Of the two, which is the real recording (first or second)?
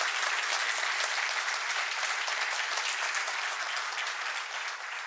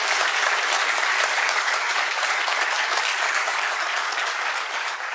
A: first